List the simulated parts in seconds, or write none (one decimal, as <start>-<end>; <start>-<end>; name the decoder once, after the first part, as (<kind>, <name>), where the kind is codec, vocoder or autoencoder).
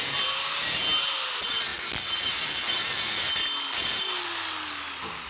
none